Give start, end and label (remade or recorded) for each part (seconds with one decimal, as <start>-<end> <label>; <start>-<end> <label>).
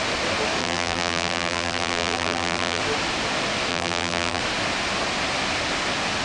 0.0-0.6 recorded; 0.6-2.8 remade; 2.8-3.7 recorded; 3.7-4.4 remade; 4.4-6.2 recorded